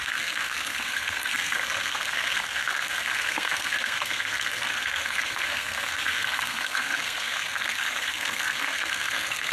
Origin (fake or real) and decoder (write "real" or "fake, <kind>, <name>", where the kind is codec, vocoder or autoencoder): fake, codec, SNAC